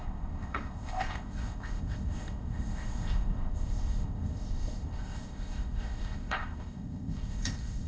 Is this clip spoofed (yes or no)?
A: yes